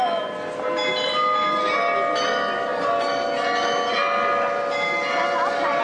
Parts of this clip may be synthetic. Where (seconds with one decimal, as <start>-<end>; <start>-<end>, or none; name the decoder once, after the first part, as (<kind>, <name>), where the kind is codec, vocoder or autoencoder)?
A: none